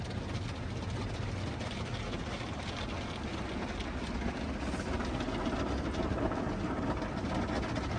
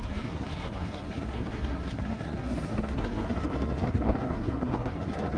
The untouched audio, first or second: first